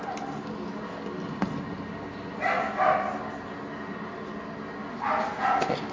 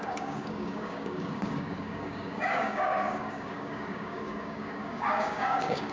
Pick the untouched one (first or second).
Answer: first